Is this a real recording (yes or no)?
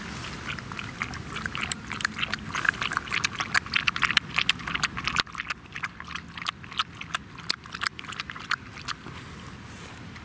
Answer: yes